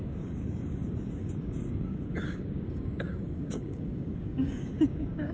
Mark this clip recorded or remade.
remade